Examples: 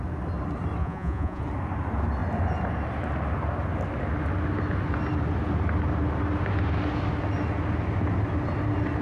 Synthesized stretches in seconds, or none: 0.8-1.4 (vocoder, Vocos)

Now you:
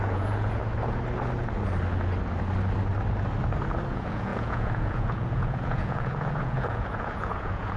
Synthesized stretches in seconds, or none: 0.0-0.6 (vocoder, Vocos); 3.9-7.8

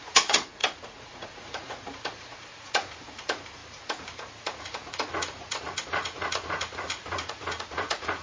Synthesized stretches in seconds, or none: 0.0-8.2 (vocoder, Vocos)

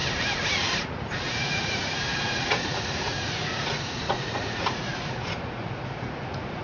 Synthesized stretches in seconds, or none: 0.5-6.6 (vocoder, Vocos)

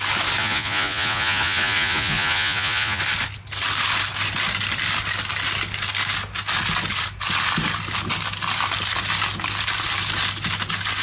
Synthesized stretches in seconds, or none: 0.4-3.0 (vocoder, Vocos)